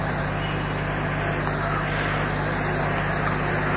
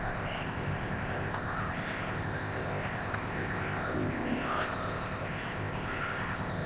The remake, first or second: second